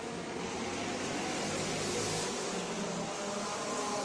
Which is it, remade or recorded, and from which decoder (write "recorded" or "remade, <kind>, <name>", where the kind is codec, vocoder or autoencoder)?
recorded